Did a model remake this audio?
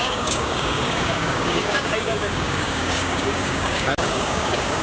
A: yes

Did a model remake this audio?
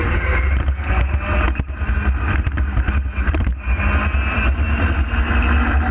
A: no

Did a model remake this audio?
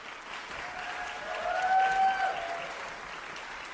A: no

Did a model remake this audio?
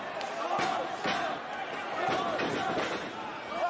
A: no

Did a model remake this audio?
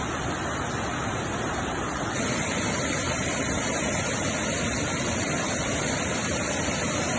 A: yes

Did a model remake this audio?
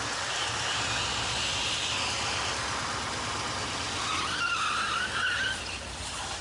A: no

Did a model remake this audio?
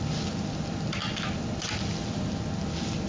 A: no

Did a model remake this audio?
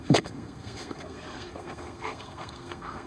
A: yes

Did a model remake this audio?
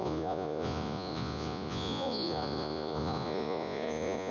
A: yes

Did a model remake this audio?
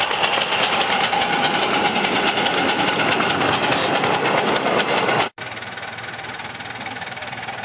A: no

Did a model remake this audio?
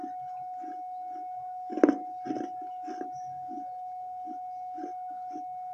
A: no